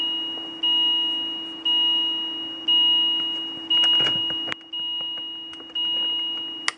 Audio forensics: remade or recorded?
recorded